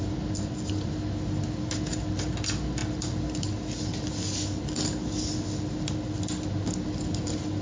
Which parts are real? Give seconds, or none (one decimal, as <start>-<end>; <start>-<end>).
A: 0.0-7.6